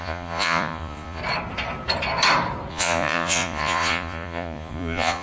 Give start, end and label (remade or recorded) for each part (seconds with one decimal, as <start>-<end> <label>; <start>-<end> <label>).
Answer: 0.0-1.2 remade; 1.2-2.7 recorded; 2.7-5.2 remade